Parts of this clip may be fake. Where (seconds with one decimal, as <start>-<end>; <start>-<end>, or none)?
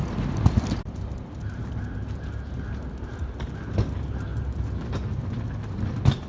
none